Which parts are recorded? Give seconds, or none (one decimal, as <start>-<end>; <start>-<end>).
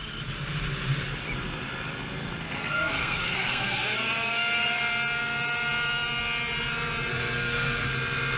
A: 0.0-2.6; 4.8-7.1; 7.9-8.4